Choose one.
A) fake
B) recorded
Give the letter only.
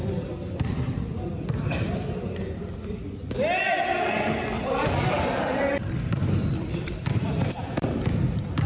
A